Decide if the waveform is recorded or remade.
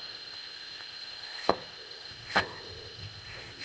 remade